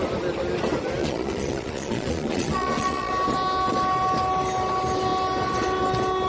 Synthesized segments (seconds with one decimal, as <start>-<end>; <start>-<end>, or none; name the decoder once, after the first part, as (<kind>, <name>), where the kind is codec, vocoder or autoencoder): 1.0-3.1 (vocoder, Vocos)